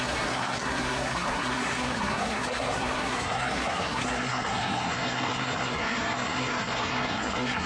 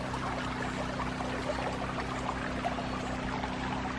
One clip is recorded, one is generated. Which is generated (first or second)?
first